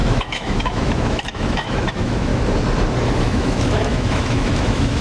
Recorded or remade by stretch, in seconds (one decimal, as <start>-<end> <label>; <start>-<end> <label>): 0.0-2.3 remade; 2.3-3.2 recorded; 3.2-5.0 remade